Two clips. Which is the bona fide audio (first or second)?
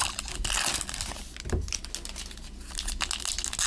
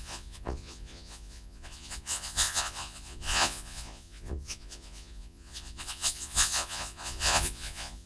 first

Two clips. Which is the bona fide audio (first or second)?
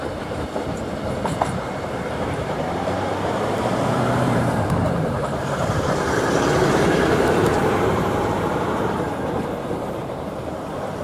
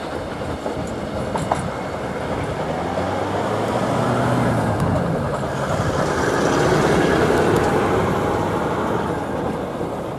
second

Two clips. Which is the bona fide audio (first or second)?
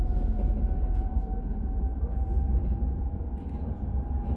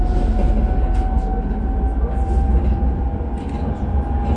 second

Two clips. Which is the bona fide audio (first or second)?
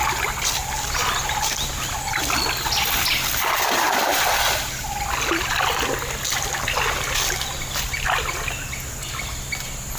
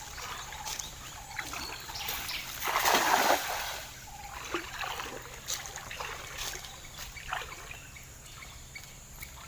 first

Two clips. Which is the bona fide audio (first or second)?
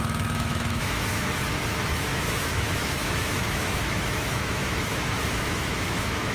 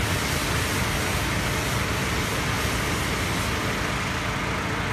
second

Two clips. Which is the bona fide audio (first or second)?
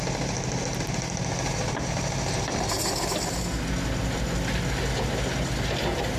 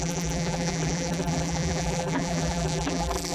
first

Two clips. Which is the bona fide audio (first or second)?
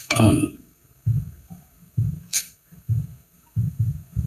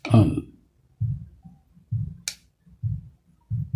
second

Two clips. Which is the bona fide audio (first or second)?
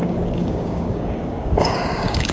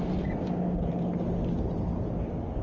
second